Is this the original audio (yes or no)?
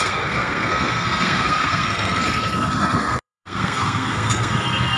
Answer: no